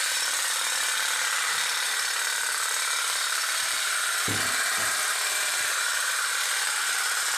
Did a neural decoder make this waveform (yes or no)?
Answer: yes